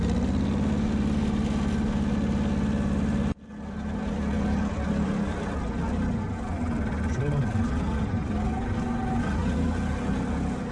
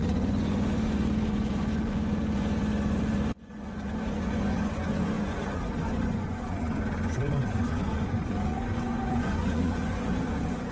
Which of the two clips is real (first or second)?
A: first